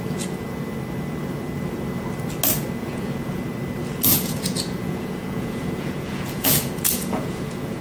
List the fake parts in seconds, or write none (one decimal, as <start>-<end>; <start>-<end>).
2.8-3.4; 4.1-7.8